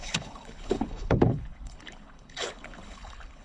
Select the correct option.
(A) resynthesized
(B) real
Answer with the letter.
A